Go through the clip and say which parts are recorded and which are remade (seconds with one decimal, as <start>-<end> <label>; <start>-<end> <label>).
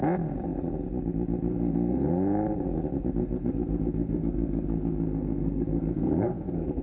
0.0-1.5 recorded; 1.5-2.1 remade; 2.1-3.2 recorded; 3.2-6.8 remade